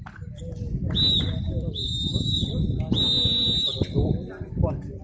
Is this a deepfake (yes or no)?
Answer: no